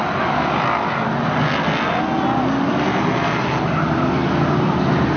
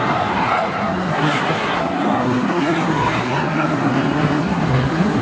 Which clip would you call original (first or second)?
first